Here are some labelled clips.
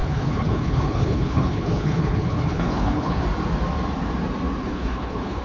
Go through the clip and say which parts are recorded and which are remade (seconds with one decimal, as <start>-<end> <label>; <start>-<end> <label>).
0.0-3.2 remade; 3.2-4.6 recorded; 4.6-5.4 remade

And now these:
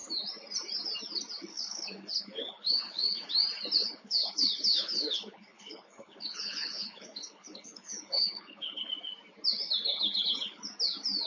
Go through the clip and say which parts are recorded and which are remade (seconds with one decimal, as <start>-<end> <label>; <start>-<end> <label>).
0.0-1.5 recorded; 1.5-3.3 remade; 3.3-3.8 recorded; 3.8-8.9 remade; 8.9-9.9 recorded; 9.9-10.6 remade; 10.6-11.3 recorded

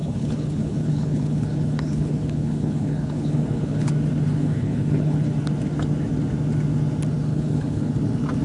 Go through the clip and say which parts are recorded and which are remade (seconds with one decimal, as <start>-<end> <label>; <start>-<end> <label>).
0.0-3.9 remade; 3.9-4.4 recorded; 4.4-5.2 remade; 5.2-7.3 recorded; 7.3-7.9 remade; 7.9-8.4 recorded